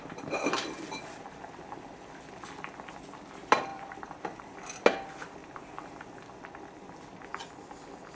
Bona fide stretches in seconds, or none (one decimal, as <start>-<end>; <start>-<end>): 0.0-3.7; 4.4-5.4; 6.0-8.2